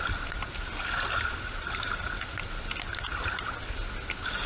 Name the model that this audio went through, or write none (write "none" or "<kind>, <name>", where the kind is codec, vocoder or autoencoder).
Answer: none